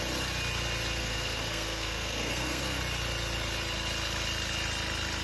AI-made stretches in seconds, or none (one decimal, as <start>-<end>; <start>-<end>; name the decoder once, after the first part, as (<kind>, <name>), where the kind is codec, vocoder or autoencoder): 1.0-2.8 (codec, SNAC)